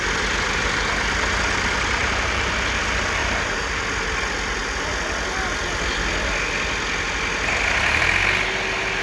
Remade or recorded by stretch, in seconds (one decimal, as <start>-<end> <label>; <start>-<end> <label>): 0.0-2.0 recorded; 2.0-2.5 remade; 2.5-3.2 recorded; 3.2-3.8 remade; 3.8-9.0 recorded